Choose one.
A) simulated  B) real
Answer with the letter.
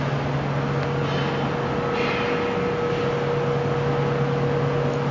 B